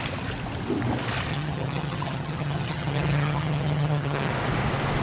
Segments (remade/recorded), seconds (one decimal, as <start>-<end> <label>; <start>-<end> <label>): 0.0-1.3 recorded; 1.3-4.3 remade; 4.3-5.0 recorded